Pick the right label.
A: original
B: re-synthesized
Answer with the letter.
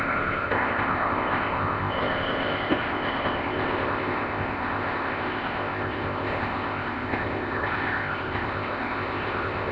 B